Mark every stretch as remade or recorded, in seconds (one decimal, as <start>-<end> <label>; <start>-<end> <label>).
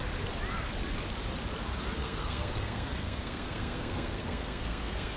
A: 0.0-2.0 recorded; 2.0-5.2 remade